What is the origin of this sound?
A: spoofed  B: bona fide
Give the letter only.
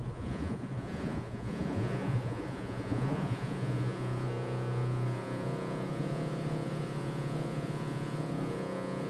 A